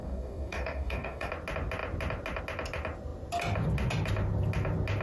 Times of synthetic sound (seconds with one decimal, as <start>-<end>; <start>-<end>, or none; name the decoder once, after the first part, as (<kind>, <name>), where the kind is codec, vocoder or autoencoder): 0.0-1.3 (codec, DAC)